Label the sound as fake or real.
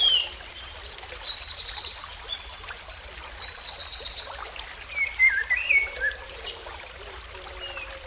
real